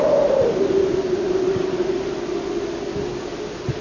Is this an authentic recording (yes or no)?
yes